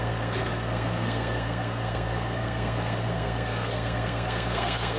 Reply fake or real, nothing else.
fake